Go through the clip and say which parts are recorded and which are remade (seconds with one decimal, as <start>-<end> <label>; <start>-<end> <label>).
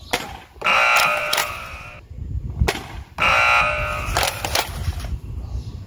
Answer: 0.0-5.9 recorded